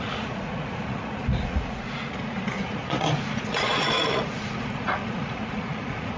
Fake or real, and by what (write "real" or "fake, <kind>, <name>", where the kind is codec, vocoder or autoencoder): fake, vocoder, Vocos